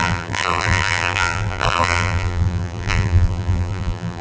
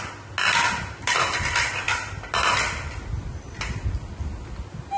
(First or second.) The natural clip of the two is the second